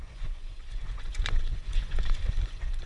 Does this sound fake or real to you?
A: fake